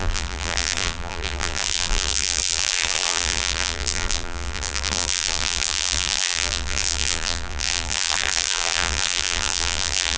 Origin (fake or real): fake